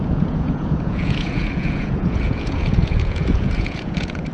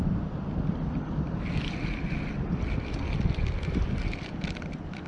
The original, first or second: second